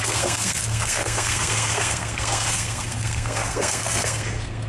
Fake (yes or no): yes